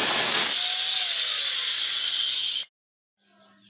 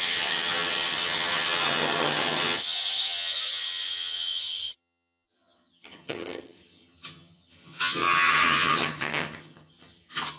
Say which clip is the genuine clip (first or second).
first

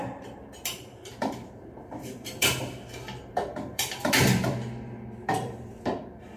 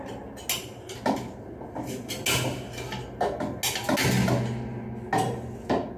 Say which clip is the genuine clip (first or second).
second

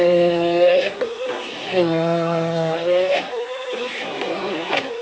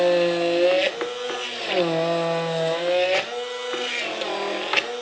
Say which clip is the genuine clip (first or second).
second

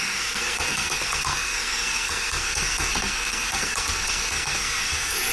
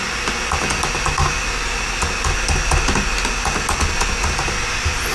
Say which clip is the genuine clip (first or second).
second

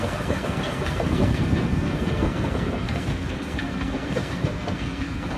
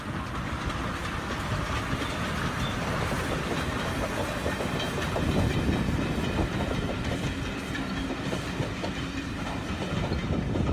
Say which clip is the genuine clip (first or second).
second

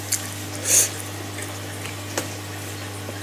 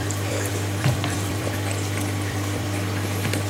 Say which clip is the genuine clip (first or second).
first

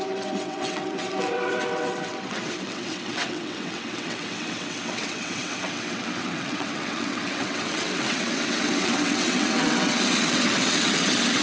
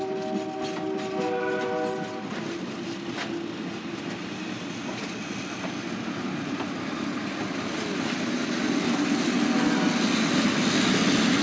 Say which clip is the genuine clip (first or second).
second